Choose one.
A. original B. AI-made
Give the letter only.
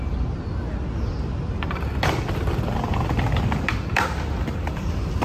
A